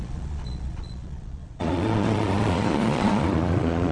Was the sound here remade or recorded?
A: remade